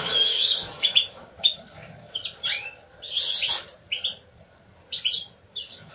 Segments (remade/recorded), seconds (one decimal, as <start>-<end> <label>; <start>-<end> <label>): 0.0-2.2 remade; 2.2-5.5 recorded; 5.5-5.9 remade